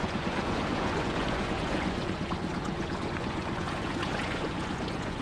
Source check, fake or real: fake